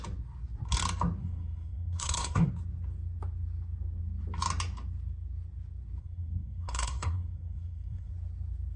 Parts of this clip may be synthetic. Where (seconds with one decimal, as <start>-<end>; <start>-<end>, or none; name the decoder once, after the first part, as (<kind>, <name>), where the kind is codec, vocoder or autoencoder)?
1.2-2.5 (codec, SNAC); 6.0-8.1